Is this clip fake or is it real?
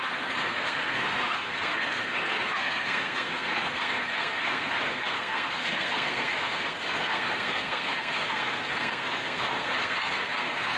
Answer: fake